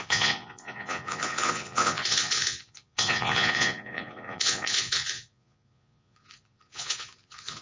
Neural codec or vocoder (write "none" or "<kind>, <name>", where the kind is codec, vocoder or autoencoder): vocoder, Vocos